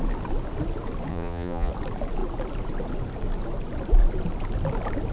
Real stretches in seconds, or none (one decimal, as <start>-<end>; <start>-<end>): 0.0-1.1; 1.7-5.1